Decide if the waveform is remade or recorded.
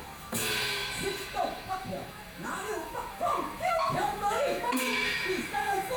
remade